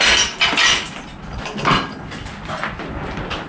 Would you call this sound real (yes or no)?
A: yes